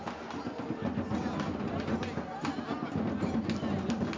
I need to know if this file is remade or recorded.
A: recorded